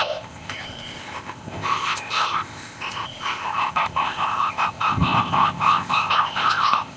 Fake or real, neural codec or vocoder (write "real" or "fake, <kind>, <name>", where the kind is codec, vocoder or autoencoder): fake, codec, ZipCodec